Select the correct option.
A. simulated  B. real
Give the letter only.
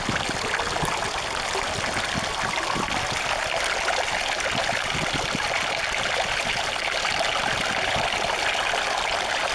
B